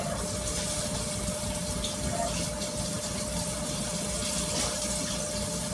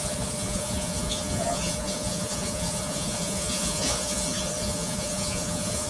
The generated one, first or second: second